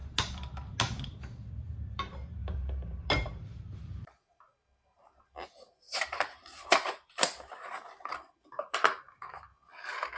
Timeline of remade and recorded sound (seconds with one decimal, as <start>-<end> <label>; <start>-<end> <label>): 0.0-1.5 recorded; 1.5-9.5 remade; 9.5-10.2 recorded